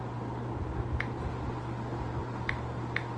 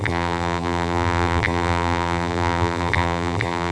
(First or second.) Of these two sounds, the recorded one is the first